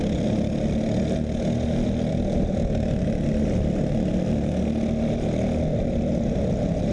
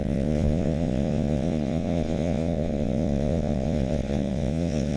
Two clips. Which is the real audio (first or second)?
first